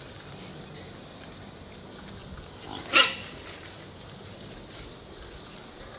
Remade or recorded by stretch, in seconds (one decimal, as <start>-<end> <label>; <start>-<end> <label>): 0.0-6.0 recorded